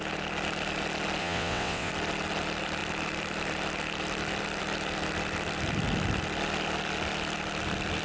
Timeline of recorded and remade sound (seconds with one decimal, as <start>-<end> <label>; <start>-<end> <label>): 0.0-1.2 recorded; 1.2-1.9 remade; 1.9-8.0 recorded